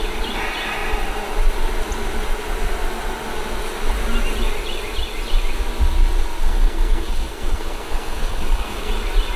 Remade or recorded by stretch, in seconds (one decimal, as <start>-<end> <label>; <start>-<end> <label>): 0.0-6.4 recorded; 6.4-8.9 remade; 8.9-9.4 recorded